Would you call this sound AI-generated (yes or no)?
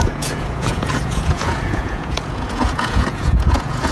yes